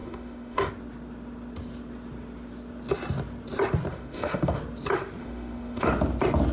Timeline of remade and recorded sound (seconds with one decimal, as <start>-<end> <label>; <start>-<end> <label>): 0.0-0.7 remade; 0.7-3.9 recorded; 3.9-4.6 remade; 4.6-5.2 recorded; 5.2-5.9 remade; 5.9-6.5 recorded